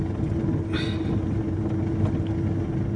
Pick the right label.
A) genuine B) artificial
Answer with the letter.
A